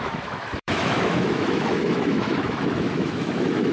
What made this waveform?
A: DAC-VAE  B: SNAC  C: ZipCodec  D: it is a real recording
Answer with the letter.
A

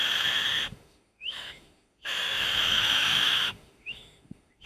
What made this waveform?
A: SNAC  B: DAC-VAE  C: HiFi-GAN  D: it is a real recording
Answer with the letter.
B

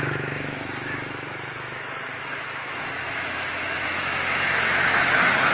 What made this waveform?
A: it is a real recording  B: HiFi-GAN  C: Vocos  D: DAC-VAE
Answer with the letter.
D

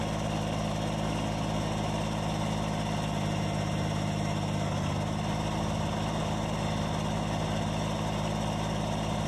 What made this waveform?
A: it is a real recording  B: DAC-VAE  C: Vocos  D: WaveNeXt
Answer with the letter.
A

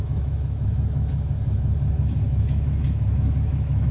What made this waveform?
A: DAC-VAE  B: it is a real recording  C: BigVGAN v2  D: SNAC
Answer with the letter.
A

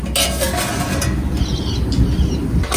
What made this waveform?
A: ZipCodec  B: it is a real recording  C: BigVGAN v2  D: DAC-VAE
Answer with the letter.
B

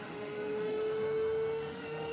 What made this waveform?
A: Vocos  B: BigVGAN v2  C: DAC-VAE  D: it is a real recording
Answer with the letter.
C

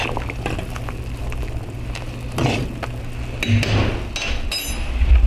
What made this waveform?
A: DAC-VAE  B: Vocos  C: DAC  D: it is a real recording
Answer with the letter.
D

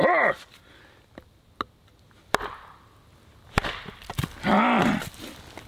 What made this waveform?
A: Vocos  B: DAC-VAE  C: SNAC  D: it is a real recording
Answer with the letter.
D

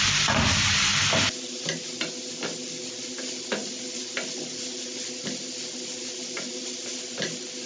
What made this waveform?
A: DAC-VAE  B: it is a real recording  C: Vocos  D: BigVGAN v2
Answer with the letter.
B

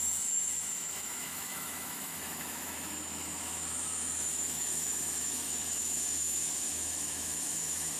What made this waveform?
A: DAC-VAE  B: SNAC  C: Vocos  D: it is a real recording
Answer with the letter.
A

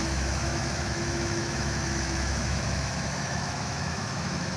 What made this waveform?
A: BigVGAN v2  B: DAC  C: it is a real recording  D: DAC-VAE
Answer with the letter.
D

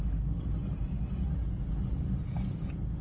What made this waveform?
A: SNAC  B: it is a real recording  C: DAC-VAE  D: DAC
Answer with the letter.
B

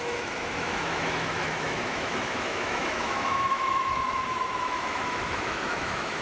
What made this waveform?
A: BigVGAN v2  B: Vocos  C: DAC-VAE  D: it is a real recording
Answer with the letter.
C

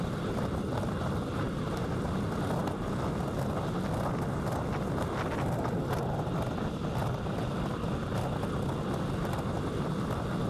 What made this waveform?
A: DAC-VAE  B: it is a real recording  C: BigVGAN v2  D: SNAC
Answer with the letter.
B